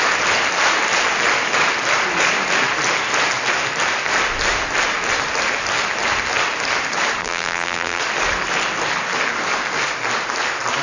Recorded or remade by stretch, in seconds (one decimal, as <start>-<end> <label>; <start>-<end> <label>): 0.0-7.2 recorded; 7.2-8.0 remade; 8.0-10.8 recorded